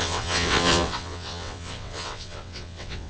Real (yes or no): no